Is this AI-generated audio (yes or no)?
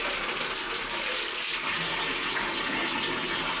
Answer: no